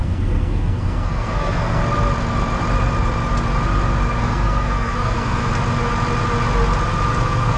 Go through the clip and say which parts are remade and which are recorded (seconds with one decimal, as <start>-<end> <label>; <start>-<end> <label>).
0.0-1.8 remade; 1.8-4.2 recorded; 4.2-5.5 remade; 5.5-7.1 recorded; 7.1-7.6 remade